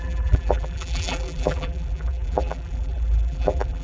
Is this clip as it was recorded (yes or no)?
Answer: no